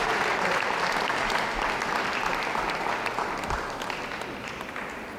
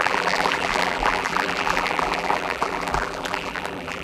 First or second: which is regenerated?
second